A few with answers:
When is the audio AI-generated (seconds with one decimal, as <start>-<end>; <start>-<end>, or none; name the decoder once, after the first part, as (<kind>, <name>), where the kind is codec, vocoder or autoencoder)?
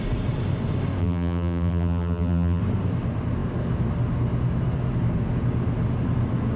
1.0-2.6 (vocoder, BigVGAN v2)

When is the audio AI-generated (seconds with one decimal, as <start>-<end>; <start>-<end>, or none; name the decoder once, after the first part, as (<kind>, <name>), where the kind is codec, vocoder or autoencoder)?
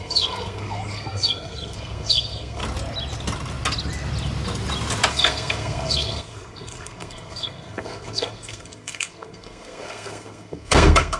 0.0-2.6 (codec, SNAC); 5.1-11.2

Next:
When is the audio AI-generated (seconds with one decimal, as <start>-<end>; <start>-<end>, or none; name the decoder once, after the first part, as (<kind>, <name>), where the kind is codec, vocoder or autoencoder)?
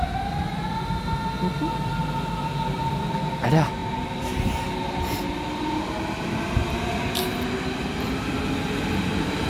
none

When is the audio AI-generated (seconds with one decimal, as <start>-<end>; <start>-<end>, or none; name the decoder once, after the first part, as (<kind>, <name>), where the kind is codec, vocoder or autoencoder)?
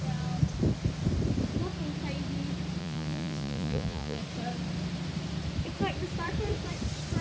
2.8-4.2 (vocoder, Vocos)